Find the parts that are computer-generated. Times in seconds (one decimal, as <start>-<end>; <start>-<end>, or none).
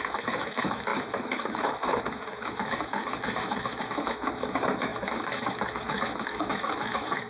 0.0-7.3